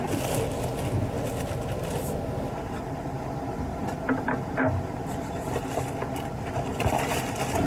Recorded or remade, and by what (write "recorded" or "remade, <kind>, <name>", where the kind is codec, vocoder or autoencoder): recorded